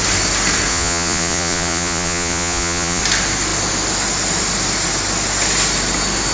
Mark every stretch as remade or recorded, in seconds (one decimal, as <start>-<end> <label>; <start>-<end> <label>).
0.0-0.7 recorded; 0.7-3.0 remade; 3.0-6.3 recorded